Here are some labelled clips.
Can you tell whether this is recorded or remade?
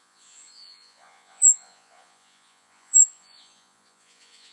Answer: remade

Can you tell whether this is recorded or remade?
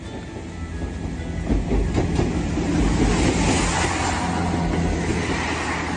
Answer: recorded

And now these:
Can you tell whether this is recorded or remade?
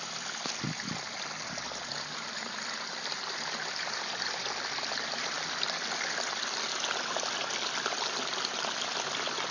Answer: recorded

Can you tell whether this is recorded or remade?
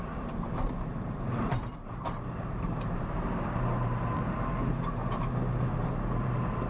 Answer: remade